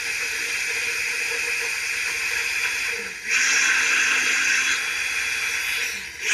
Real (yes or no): yes